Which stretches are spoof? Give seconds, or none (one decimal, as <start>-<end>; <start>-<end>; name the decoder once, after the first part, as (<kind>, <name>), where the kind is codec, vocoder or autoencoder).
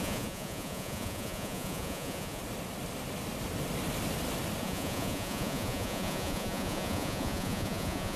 0.0-2.4 (vocoder, Vocos); 4.6-8.2